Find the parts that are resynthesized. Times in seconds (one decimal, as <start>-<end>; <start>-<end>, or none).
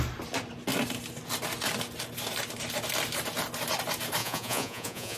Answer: 4.2-5.2